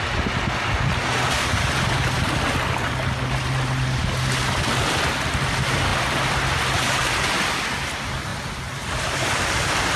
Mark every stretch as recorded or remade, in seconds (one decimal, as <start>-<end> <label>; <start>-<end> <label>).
0.0-5.9 recorded; 5.9-7.1 remade; 7.1-8.3 recorded; 8.3-9.5 remade; 9.5-10.0 recorded